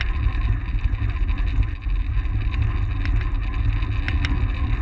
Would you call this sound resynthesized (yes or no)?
no